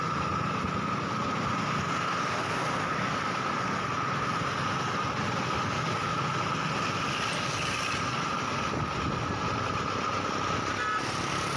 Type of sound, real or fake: real